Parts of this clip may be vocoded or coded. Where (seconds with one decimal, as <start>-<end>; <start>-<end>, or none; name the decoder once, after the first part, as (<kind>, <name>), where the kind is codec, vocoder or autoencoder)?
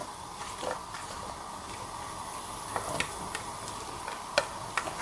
none